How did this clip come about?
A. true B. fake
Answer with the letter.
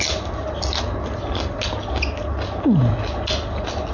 A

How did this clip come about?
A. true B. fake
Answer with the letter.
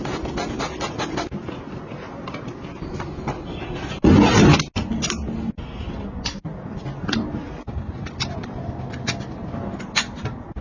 A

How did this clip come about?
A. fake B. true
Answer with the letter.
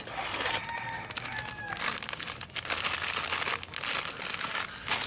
B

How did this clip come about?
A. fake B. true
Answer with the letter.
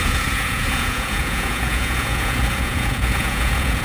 A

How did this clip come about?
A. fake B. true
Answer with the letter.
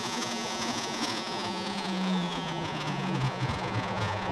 A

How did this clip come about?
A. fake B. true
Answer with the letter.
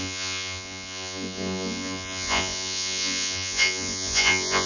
A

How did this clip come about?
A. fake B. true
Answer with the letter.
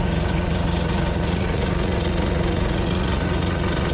A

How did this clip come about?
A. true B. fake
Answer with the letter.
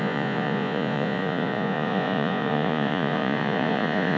B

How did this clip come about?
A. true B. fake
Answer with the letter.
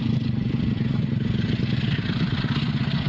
A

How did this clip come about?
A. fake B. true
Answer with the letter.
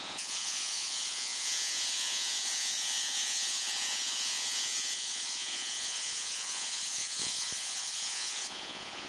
A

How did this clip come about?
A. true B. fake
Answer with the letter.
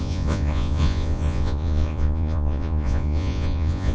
B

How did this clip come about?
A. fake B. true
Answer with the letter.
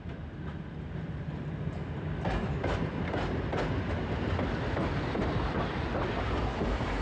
B